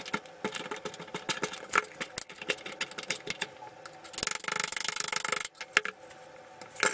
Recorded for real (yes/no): yes